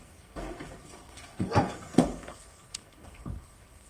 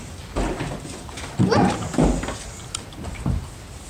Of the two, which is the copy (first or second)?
first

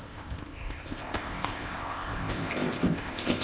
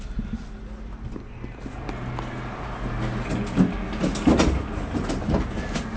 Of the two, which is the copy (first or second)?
first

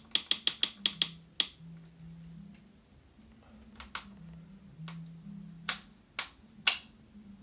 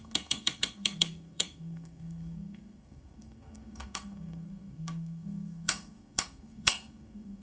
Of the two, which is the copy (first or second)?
second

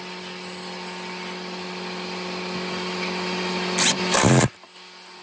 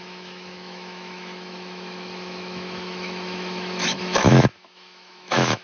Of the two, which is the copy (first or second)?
second